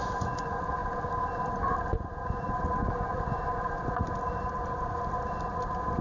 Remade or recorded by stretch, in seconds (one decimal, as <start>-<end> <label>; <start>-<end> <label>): 0.0-6.0 recorded